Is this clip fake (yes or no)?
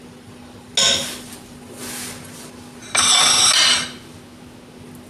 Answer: no